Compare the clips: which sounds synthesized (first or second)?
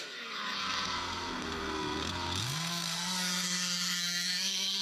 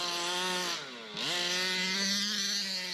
first